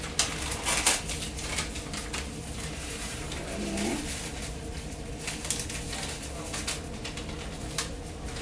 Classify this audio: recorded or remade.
recorded